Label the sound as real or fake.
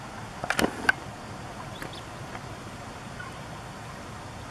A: real